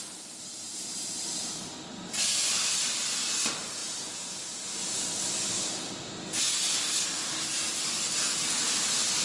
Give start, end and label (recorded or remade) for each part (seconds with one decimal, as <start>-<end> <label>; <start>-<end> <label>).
0.0-0.7 recorded; 0.7-1.6 remade; 1.6-3.8 recorded; 3.8-5.5 remade; 5.5-9.2 recorded